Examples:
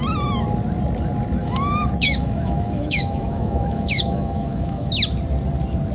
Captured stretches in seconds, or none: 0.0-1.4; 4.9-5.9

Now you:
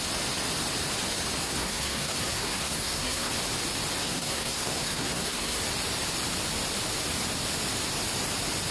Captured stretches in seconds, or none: 0.0-1.4; 3.3-4.0; 5.6-8.7

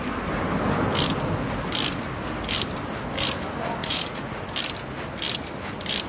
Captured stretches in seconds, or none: 0.0-3.8; 4.4-6.1